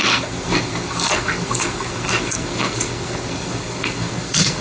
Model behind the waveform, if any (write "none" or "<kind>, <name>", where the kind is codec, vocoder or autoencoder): codec, SNAC